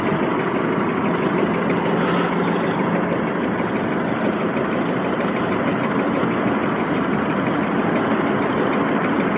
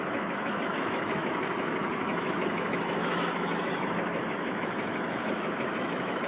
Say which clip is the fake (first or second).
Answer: second